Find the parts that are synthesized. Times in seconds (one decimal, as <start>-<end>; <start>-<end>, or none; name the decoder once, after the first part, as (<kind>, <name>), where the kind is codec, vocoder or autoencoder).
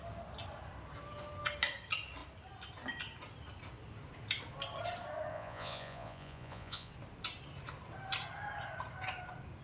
5.3-6.9 (vocoder, Vocos)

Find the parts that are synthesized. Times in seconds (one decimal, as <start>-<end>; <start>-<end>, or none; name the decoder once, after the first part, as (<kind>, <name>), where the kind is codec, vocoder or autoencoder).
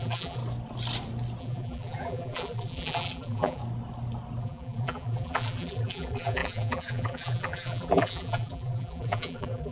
0.0-0.4 (vocoder, BigVGAN v2); 1.4-3.6; 4.4-9.7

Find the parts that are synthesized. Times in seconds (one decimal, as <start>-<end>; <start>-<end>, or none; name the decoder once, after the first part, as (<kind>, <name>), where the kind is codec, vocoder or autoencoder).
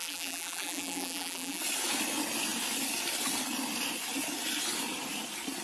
0.0-1.6 (vocoder, BigVGAN v2)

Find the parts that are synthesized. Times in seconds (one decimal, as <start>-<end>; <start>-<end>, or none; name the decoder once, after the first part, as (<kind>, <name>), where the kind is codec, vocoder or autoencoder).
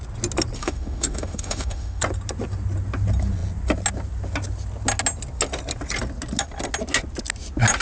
0.6-2.0 (autoencoder, DAC-VAE)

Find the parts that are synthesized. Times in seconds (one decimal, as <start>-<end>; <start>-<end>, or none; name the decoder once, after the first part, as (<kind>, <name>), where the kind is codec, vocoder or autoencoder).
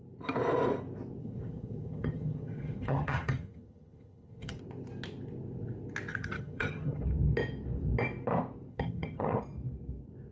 1.2-4.6 (vocoder, HiFi-GAN); 6.1-7.0; 8.7-9.4